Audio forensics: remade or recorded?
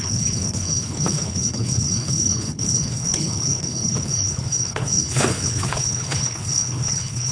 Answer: remade